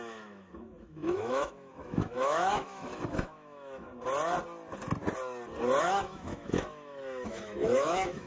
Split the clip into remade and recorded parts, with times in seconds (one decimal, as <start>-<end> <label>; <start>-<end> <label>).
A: 0.0-3.9 remade; 3.9-5.8 recorded; 5.8-8.3 remade